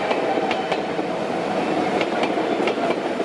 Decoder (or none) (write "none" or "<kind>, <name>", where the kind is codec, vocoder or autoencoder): none